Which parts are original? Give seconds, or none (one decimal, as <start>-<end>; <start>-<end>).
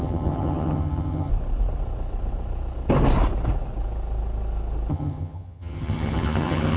1.3-4.9